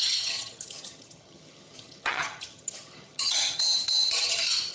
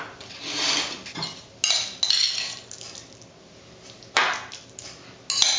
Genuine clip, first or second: second